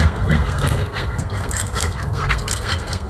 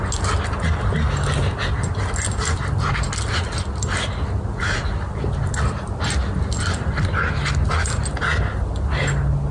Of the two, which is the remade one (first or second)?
first